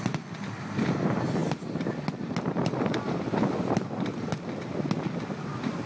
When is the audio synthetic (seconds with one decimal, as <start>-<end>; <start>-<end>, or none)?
none